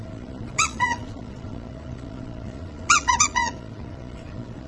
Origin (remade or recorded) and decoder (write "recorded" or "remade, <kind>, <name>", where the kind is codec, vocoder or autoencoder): remade, vocoder, Vocos